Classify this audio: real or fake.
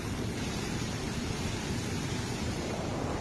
fake